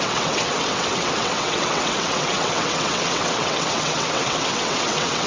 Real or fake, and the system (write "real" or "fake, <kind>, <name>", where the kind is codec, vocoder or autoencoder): fake, vocoder, WaveNeXt